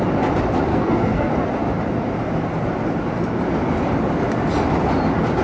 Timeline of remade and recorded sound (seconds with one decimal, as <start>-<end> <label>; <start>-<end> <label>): 0.0-0.7 recorded; 0.7-1.3 remade; 1.3-5.4 recorded

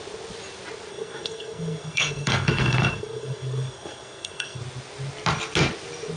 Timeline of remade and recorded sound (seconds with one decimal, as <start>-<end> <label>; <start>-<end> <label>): 0.0-0.9 recorded; 0.9-4.6 remade; 4.6-6.2 recorded

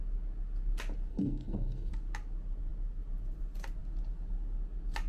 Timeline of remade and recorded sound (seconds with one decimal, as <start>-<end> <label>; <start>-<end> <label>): 0.0-1.1 recorded; 1.1-1.9 remade; 1.9-5.1 recorded

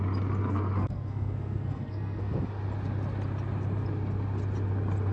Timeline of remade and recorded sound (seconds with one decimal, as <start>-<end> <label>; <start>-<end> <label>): 0.0-0.4 recorded; 0.4-2.5 remade; 2.5-5.1 recorded